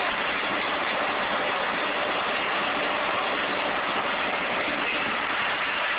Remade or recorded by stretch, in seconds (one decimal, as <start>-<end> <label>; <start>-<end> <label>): 0.0-0.8 remade; 0.8-4.4 recorded; 4.4-6.0 remade